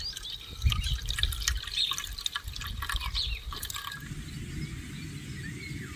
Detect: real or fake real